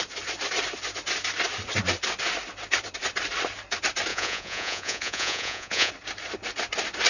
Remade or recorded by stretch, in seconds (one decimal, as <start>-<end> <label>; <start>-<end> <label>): 0.0-4.1 recorded; 4.1-5.9 remade; 5.9-7.1 recorded